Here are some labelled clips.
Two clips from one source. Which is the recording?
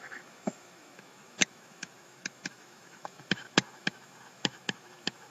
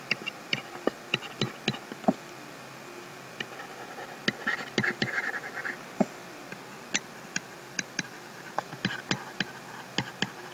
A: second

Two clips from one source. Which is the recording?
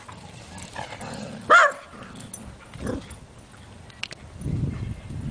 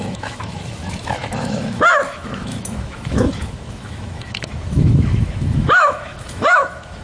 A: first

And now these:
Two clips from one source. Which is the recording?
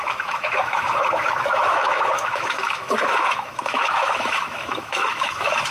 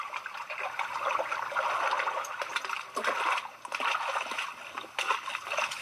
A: second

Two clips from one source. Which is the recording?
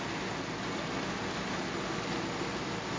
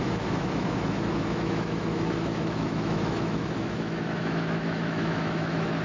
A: first